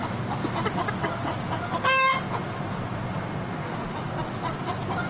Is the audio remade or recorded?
recorded